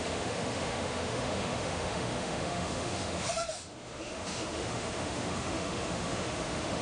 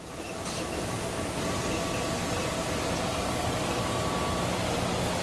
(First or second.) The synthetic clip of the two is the first